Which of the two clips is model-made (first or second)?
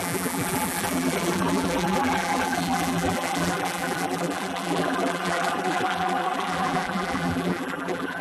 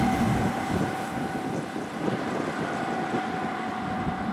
first